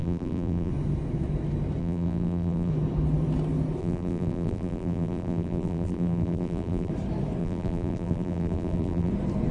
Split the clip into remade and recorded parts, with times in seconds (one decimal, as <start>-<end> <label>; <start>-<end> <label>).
0.0-0.7 remade; 0.7-1.8 recorded; 1.8-2.7 remade; 2.7-3.8 recorded; 3.8-6.9 remade; 6.9-7.4 recorded; 7.4-9.1 remade; 9.1-9.5 recorded